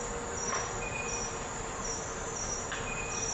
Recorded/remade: recorded